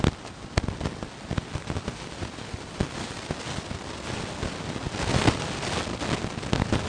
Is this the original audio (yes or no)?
yes